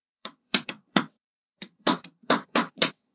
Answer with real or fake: fake